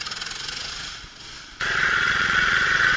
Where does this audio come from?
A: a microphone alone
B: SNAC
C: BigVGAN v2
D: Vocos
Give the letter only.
D